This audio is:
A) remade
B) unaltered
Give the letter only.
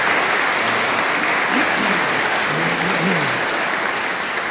B